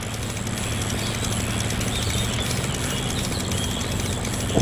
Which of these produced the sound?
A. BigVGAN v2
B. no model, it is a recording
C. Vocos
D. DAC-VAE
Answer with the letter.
B